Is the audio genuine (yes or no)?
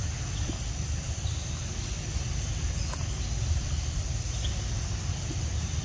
yes